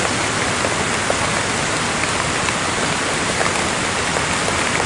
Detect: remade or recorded recorded